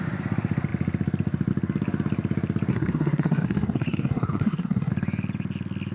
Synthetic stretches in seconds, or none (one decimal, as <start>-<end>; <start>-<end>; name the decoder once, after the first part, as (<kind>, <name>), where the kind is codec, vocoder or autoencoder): 2.7-4.9 (codec, SNAC)